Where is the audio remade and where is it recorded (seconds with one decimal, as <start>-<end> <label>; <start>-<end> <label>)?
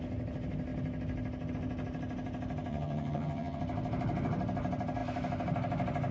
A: 0.0-2.7 recorded; 2.7-3.6 remade; 3.6-6.1 recorded